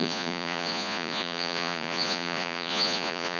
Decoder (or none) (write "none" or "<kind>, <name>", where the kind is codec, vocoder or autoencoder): vocoder, Vocos